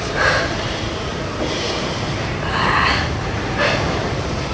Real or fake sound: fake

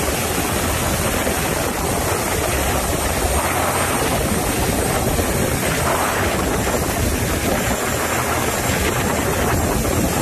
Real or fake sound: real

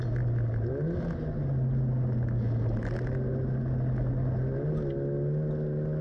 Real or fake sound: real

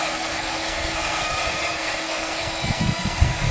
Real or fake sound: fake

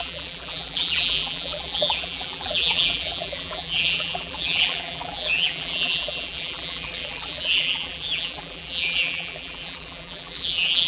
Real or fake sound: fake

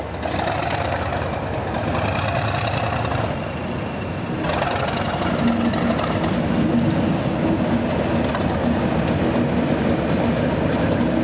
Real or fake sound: real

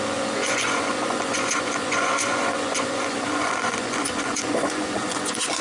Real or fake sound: fake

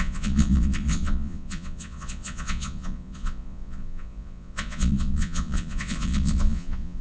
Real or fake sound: fake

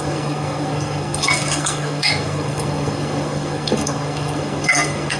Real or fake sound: fake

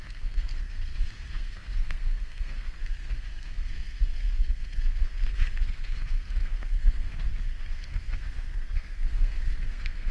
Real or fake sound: fake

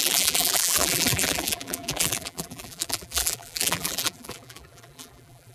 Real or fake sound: fake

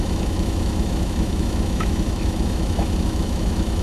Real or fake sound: fake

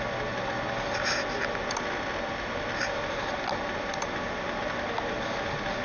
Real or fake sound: real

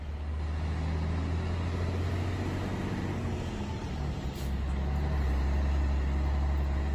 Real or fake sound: real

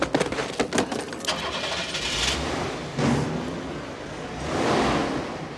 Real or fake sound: real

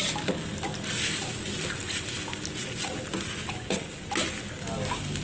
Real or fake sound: real